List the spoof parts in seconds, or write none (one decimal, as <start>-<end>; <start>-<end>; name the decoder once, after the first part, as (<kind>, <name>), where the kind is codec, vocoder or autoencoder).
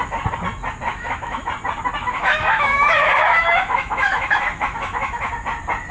0.9-1.5 (autoencoder, DAC-VAE); 2.0-5.3